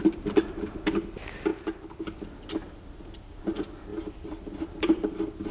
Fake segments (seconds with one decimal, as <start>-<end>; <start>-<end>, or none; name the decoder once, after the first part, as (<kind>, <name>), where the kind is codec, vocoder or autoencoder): 2.6-3.4 (vocoder, BigVGAN v2); 3.9-5.5